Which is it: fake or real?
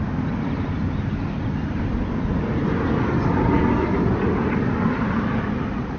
real